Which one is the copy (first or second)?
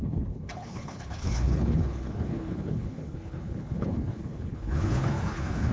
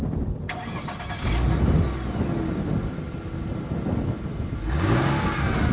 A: first